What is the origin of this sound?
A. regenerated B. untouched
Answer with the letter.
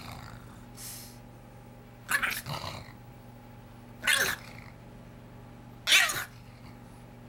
B